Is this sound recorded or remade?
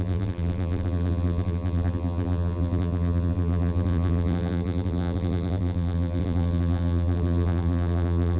remade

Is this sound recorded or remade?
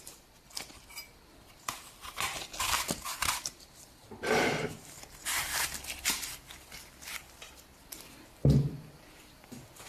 remade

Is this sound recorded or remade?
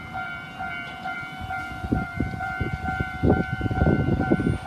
remade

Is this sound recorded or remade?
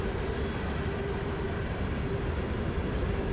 remade